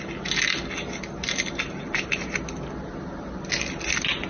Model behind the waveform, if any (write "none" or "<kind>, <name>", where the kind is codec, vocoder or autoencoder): none